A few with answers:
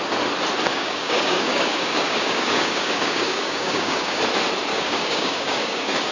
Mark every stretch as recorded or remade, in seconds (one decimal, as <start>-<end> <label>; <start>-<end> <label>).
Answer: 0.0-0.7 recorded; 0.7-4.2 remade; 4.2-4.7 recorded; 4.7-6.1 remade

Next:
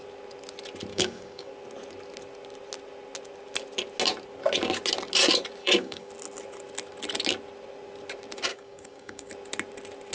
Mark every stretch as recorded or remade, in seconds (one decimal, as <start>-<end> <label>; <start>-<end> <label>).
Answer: 0.0-0.9 recorded; 0.9-1.5 remade; 1.5-5.6 recorded; 5.6-6.1 remade; 6.1-8.5 recorded; 8.5-9.3 remade; 9.3-10.1 recorded

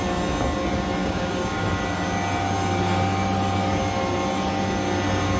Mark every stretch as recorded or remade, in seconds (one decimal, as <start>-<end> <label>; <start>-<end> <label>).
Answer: 0.0-1.0 recorded; 1.0-1.6 remade; 1.6-5.4 recorded

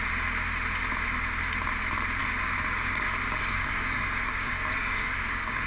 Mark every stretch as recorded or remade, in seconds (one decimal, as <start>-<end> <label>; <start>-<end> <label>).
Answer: 0.0-2.2 recorded; 2.2-5.7 remade

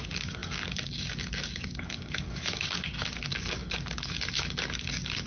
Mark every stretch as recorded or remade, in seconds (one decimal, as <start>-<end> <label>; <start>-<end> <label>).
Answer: 0.0-5.3 remade

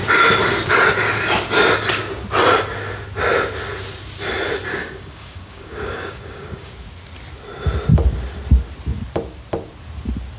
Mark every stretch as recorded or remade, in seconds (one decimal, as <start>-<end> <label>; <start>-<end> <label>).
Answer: 0.0-4.7 recorded; 4.7-6.7 remade; 6.7-10.4 recorded